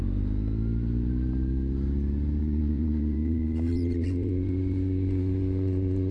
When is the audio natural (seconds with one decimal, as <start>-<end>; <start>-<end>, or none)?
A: 0.0-2.4